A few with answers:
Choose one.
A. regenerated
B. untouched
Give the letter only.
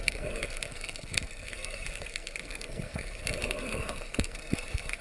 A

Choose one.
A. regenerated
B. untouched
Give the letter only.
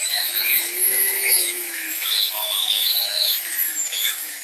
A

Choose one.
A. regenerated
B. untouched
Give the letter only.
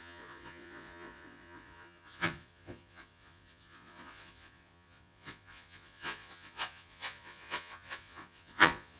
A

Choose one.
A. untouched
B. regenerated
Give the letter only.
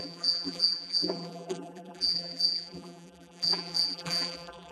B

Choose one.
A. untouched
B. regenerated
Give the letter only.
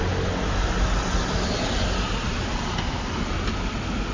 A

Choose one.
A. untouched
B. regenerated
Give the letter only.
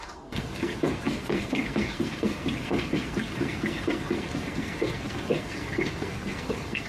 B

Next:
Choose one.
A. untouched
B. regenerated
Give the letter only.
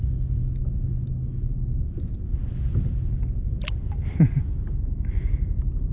A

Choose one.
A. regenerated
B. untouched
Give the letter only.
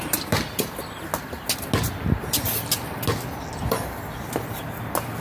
B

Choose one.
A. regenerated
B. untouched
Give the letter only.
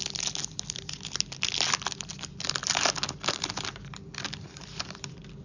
B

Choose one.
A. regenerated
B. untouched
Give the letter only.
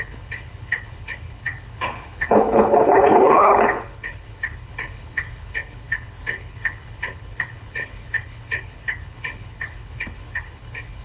A